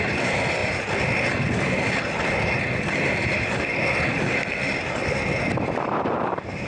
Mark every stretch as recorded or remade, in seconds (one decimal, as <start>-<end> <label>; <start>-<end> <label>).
0.0-6.7 recorded